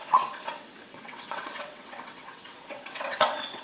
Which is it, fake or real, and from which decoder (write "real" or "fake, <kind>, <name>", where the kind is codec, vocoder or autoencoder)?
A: fake, vocoder, WaveNeXt